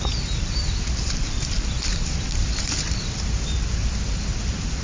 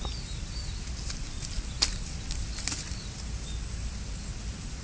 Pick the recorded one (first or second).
second